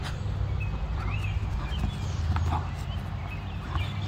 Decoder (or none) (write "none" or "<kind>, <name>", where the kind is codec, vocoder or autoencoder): none